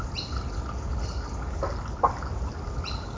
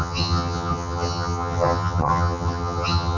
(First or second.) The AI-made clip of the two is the second